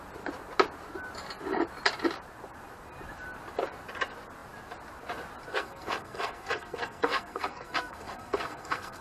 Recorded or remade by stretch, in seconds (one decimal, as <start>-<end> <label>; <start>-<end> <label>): 0.0-5.5 recorded; 5.5-9.0 remade